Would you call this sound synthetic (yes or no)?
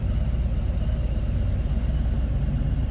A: no